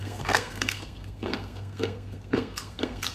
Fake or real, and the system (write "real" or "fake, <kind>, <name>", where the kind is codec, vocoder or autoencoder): fake, codec, SNAC